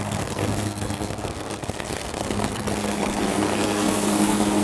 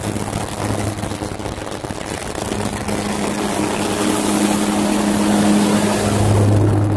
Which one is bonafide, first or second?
second